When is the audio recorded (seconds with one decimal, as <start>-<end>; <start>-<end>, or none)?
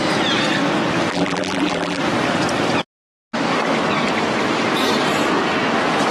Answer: 0.0-1.1; 2.0-6.1